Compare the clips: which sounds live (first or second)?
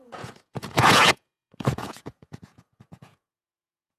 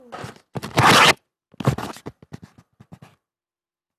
second